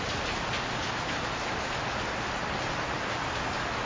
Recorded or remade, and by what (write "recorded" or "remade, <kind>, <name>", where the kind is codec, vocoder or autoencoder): recorded